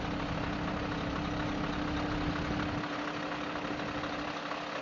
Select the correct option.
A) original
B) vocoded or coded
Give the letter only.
A